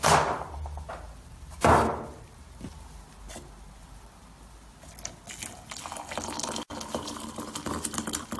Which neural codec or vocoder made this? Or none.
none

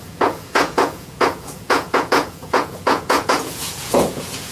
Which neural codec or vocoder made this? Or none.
vocoder, Vocos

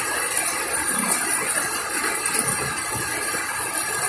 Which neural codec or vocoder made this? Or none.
none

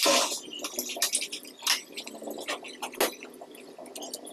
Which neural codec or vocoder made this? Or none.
none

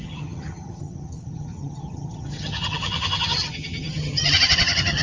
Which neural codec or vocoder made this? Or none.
vocoder, HiFi-GAN